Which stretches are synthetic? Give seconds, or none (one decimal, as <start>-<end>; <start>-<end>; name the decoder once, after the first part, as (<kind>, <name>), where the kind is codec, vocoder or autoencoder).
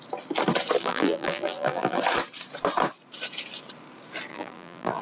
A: 0.8-2.0 (vocoder, BigVGAN v2); 4.3-5.0